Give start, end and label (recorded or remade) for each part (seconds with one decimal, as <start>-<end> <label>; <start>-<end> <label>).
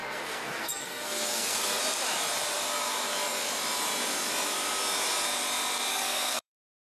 0.0-1.8 remade; 1.8-5.9 recorded; 5.9-6.9 remade